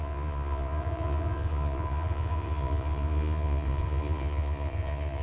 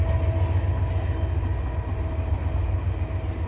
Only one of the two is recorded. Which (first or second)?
second